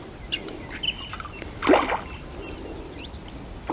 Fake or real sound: real